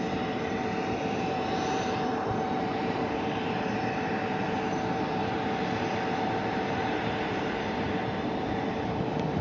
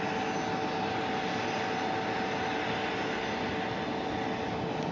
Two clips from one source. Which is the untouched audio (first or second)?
second